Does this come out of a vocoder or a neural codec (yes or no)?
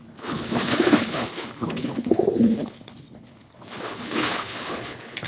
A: yes